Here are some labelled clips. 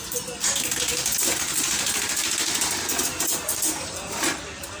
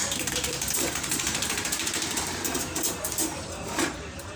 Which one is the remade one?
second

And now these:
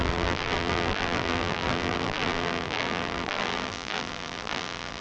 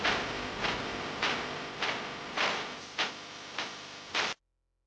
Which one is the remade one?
first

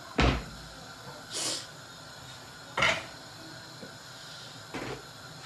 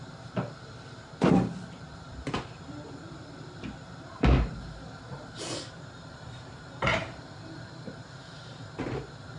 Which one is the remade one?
second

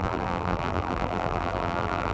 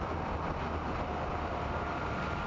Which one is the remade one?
first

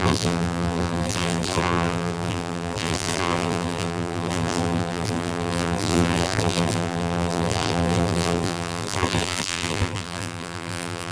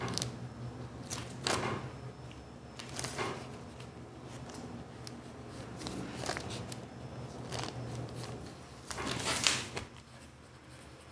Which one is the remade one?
first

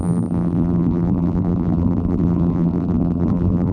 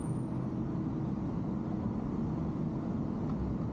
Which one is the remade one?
first